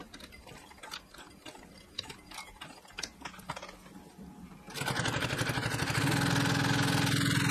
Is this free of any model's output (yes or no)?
yes